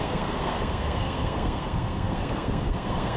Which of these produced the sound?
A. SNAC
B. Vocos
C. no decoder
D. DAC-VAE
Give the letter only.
A